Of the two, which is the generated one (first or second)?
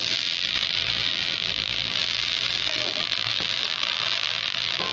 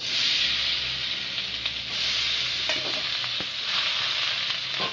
first